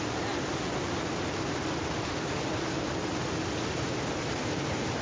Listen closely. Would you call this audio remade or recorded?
recorded